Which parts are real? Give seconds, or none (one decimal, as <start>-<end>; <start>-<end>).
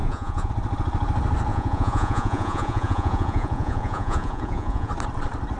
0.5-1.5; 4.9-5.6